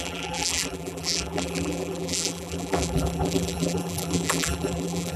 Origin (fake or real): fake